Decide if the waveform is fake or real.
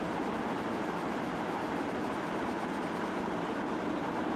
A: real